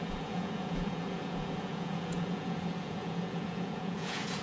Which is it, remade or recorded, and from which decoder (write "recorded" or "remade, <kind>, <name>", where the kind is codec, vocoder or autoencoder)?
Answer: remade, vocoder, Vocos